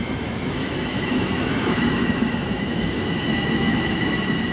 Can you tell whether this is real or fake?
fake